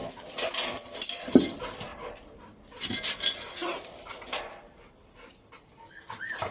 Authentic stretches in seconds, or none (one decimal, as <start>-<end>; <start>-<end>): 0.0-6.5